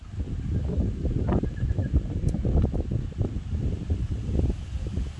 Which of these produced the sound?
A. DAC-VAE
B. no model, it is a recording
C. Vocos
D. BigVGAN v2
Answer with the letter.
B